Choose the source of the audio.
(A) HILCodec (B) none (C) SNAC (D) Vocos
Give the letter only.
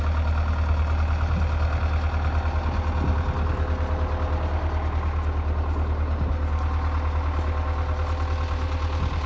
B